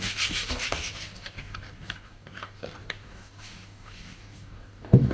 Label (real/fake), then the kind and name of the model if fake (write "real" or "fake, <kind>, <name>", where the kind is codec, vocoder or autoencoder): fake, codec, DAC